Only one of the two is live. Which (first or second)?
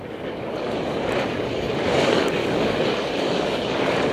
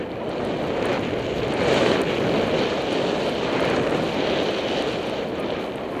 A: second